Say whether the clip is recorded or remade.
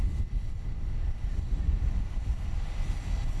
recorded